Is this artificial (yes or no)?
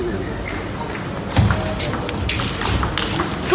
no